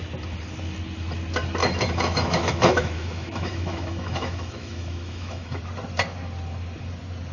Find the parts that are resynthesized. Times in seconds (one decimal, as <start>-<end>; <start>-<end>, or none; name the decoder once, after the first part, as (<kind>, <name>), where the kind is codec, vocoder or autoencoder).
1.6-5.6 (autoencoder, DAC-VAE)